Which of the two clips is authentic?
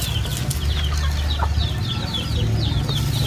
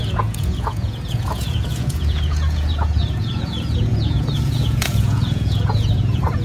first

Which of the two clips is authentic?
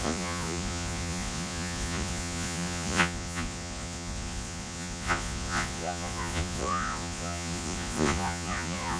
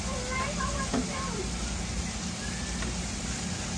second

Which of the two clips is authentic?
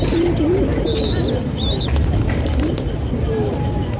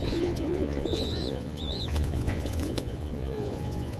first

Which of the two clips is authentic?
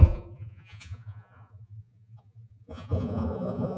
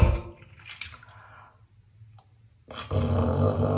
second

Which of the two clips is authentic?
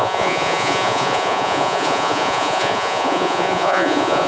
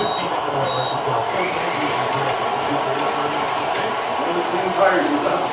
second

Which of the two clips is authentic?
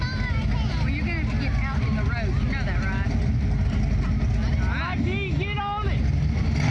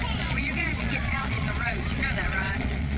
first